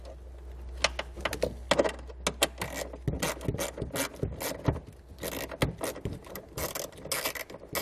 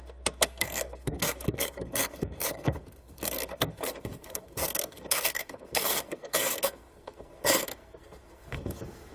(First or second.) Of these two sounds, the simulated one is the second